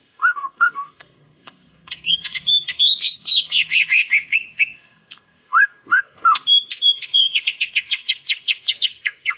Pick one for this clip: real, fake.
fake